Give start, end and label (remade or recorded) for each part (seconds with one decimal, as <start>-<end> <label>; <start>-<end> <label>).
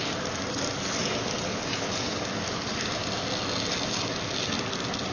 0.0-5.1 recorded